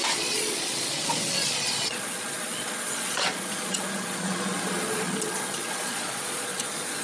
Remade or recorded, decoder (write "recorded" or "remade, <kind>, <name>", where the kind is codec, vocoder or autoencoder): remade, vocoder, Vocos